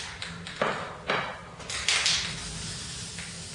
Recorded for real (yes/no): yes